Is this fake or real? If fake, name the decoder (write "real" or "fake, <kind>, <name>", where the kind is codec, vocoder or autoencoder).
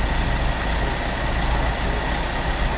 real